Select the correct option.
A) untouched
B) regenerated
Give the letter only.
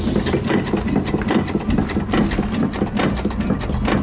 A